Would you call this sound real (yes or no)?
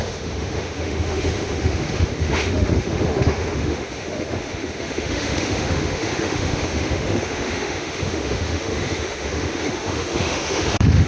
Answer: no